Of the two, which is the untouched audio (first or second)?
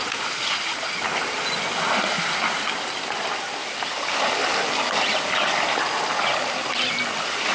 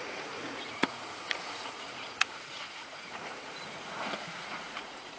first